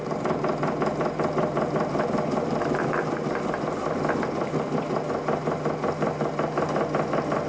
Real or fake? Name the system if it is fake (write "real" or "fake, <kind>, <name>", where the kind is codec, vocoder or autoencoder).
real